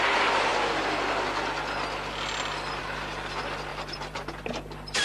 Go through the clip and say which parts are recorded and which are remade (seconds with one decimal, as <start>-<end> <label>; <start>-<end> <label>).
0.0-3.7 recorded; 3.7-4.3 remade; 4.3-5.0 recorded